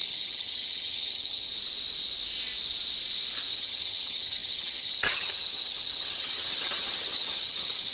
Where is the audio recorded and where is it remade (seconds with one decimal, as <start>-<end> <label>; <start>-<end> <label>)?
0.0-1.5 remade; 1.5-3.4 recorded; 3.4-7.9 remade

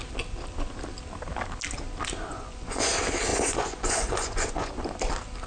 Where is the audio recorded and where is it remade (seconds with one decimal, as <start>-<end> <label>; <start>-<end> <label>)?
0.0-2.3 recorded; 2.3-2.9 remade; 2.9-3.3 recorded; 3.3-4.7 remade; 4.7-5.5 recorded

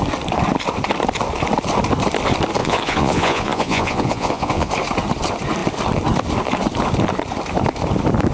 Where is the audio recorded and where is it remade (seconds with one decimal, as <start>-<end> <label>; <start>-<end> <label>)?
0.0-2.6 recorded; 2.6-4.7 remade; 4.7-8.3 recorded

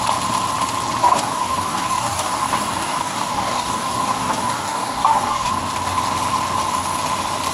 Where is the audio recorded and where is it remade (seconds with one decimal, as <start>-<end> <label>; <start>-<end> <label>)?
0.0-1.0 recorded; 1.0-5.5 remade; 5.5-7.5 recorded